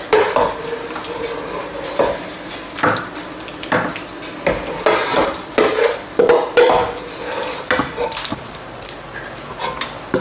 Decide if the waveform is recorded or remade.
recorded